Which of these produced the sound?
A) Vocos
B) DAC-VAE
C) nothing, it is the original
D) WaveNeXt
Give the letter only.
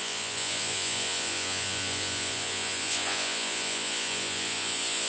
A